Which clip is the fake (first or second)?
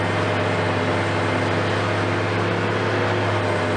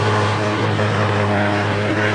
second